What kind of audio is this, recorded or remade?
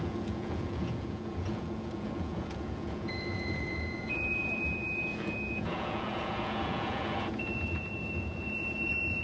remade